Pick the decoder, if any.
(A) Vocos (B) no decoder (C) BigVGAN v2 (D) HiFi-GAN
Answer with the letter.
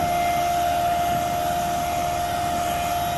B